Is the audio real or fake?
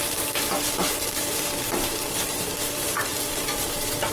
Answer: fake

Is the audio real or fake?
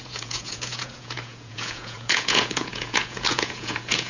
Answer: fake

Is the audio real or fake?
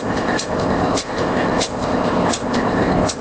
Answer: fake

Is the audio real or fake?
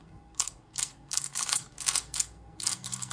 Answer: fake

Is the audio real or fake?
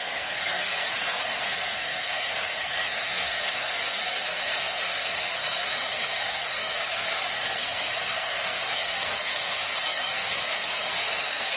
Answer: fake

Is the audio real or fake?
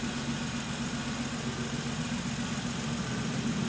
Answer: real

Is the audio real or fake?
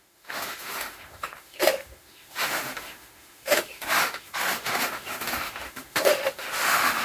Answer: fake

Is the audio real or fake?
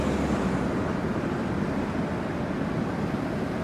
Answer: real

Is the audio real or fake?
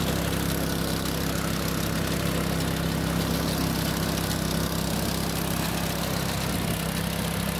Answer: real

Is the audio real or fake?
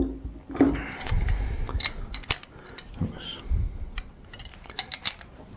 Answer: real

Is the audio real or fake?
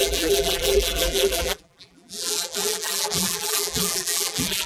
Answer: fake